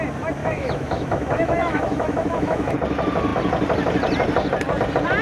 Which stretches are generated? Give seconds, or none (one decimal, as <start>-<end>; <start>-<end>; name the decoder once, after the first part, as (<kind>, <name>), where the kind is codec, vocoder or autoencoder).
0.4-2.7 (autoencoder, DAC-VAE)